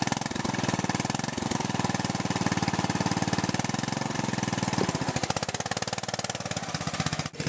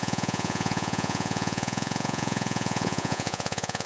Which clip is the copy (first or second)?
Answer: second